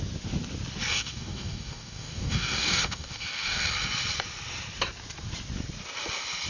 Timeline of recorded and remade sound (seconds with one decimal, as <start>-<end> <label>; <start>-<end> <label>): 0.0-0.9 recorded; 0.9-3.7 remade; 3.7-6.5 recorded

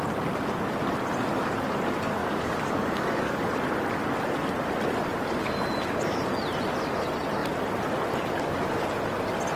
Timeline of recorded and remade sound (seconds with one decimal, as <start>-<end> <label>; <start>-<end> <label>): 0.0-2.2 recorded; 2.2-3.5 remade; 3.5-9.6 recorded